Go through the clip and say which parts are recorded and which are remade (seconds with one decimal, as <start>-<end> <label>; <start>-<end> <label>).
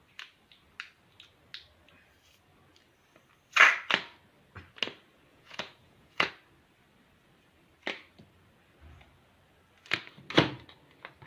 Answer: 0.0-5.3 recorded; 5.3-6.3 remade; 6.3-11.3 recorded